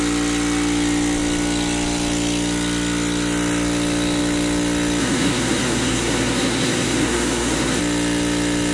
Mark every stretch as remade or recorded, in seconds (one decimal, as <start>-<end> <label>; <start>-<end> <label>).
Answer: 0.0-5.0 recorded; 5.0-7.8 remade; 7.8-8.7 recorded